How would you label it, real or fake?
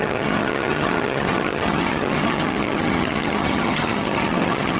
fake